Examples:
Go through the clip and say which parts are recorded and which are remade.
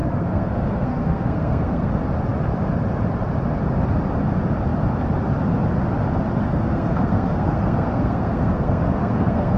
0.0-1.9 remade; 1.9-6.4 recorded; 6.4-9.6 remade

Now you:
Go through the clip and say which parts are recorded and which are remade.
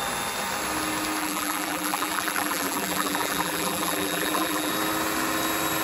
0.0-1.2 recorded; 1.2-4.7 remade; 4.7-5.8 recorded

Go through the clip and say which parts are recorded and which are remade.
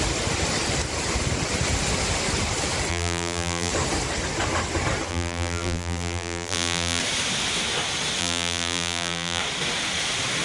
0.0-2.9 recorded; 2.9-3.7 remade; 3.7-5.1 recorded; 5.1-7.0 remade; 7.0-8.2 recorded; 8.2-9.4 remade; 9.4-10.4 recorded